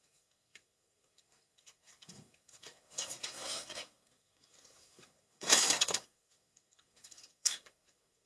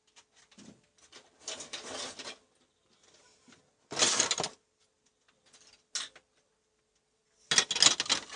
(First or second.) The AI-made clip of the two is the first